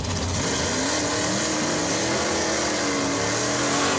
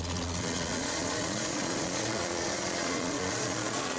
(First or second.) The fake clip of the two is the second